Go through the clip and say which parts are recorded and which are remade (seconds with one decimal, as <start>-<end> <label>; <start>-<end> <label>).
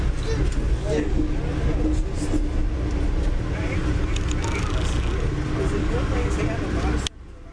0.0-0.8 recorded; 0.8-1.3 remade; 1.3-5.8 recorded; 5.8-6.4 remade; 6.4-7.5 recorded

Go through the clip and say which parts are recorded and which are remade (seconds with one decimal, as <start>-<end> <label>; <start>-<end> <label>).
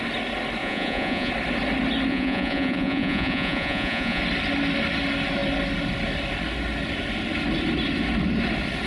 0.0-0.6 recorded; 0.6-1.3 remade; 1.3-2.1 recorded; 2.1-4.2 remade; 4.2-8.9 recorded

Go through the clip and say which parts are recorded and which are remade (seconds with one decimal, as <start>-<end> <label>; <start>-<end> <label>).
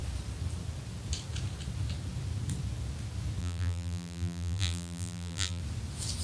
0.0-3.4 recorded; 3.4-5.6 remade; 5.6-6.2 recorded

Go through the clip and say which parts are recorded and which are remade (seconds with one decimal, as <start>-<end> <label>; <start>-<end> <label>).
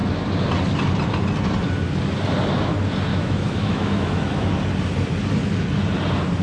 0.0-3.1 recorded; 3.1-4.5 remade; 4.5-6.4 recorded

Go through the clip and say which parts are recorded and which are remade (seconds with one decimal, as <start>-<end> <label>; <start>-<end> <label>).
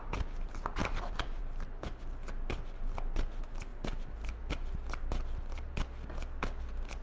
0.0-0.8 recorded; 0.8-1.4 remade; 1.4-7.0 recorded